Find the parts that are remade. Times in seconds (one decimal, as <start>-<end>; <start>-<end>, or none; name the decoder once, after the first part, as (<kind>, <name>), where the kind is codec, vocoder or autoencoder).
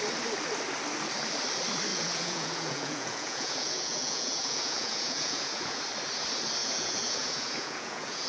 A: 1.9-5.8 (vocoder, Vocos); 6.6-8.3